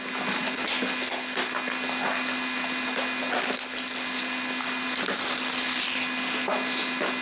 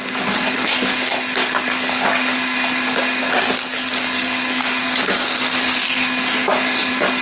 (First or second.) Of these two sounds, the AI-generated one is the second